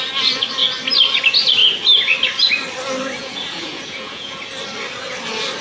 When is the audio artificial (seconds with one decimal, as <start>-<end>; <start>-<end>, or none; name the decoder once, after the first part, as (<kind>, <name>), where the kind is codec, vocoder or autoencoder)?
3.2-4.4 (vocoder, Vocos)